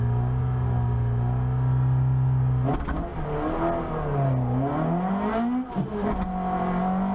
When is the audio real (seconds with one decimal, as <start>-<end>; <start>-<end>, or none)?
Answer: 0.0-7.1